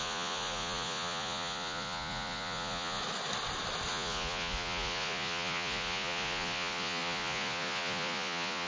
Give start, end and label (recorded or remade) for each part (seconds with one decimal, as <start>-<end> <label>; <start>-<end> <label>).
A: 0.0-3.0 remade; 3.0-3.9 recorded; 3.9-8.7 remade